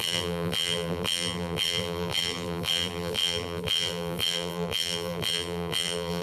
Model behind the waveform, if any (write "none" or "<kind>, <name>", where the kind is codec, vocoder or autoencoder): vocoder, BigVGAN v2